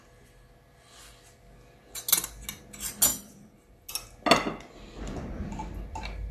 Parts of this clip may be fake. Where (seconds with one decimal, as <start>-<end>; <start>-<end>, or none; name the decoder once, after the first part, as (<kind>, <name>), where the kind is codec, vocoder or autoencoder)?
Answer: 3.1-3.9 (vocoder, BigVGAN v2)